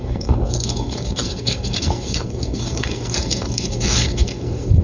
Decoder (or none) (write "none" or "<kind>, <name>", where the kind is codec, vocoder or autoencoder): codec, SNAC